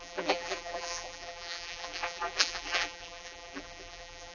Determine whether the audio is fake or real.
fake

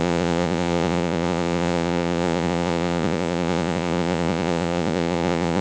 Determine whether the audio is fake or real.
fake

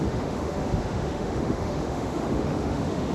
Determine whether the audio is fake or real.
fake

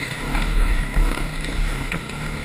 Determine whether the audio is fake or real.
fake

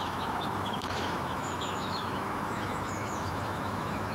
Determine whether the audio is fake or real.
fake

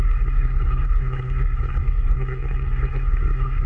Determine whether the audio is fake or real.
fake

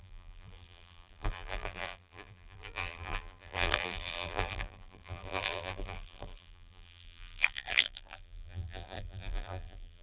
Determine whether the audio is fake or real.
fake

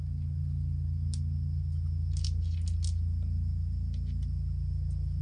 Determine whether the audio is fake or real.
real